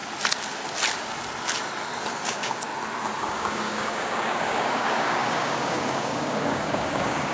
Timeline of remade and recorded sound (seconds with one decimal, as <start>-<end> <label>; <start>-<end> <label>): 0.0-2.2 recorded; 2.2-2.7 remade; 2.7-3.2 recorded; 3.2-7.3 remade